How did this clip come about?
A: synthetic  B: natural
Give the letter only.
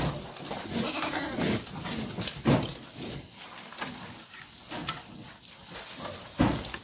B